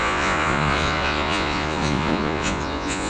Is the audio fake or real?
fake